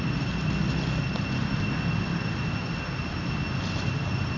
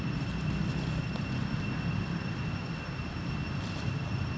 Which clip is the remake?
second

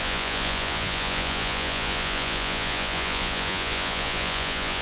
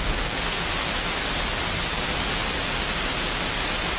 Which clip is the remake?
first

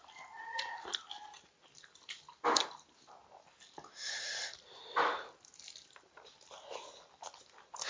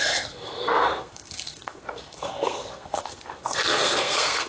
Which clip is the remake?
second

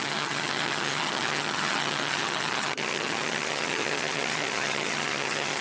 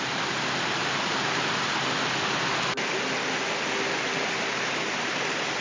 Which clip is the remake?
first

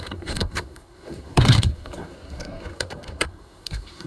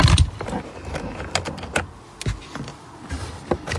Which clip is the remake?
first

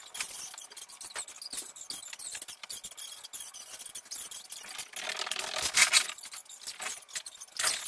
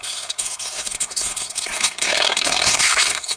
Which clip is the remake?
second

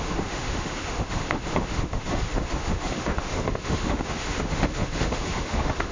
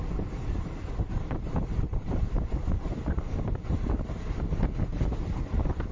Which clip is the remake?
first